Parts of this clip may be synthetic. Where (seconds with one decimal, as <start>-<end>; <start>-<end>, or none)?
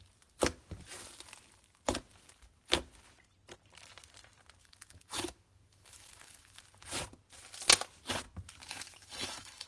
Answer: 4.6-6.6; 8.6-9.7